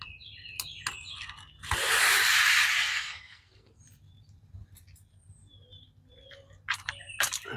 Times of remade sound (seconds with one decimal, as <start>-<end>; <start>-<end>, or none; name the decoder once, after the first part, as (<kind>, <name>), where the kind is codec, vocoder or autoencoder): 2.9-3.8 (codec, SNAC)